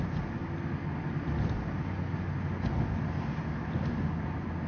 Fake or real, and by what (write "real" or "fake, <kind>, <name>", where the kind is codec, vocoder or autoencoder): real